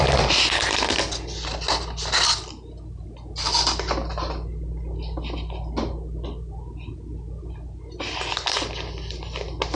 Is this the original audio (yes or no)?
yes